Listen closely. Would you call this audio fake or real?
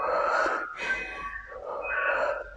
real